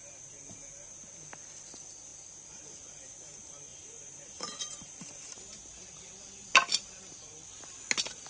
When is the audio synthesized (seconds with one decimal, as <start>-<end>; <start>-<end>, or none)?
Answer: 3.7-5.6